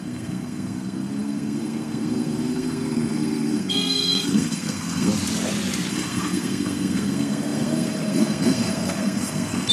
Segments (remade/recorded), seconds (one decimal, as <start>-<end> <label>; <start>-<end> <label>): 0.0-5.1 remade; 5.1-5.9 recorded; 5.9-9.7 remade